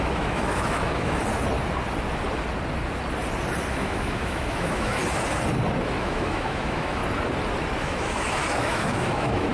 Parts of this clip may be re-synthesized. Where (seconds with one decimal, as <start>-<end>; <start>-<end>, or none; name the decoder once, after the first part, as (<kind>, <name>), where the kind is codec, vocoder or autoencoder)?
0.0-1.2 (autoencoder, DAC-VAE); 3.7-5.0; 6.0-7.0; 7.8-9.5